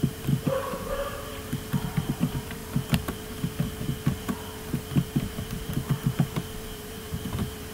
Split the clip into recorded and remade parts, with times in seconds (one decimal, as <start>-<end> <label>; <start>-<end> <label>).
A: 0.0-1.3 remade; 1.3-2.0 recorded; 2.0-2.6 remade; 2.6-5.2 recorded; 5.2-7.7 remade